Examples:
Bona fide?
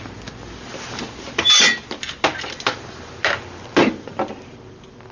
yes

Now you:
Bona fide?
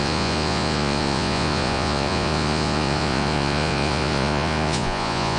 no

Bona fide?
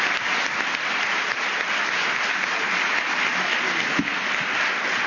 yes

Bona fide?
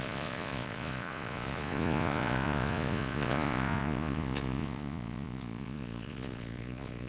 no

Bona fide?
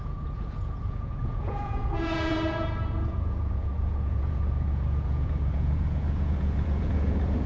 no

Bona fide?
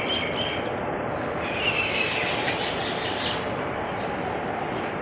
yes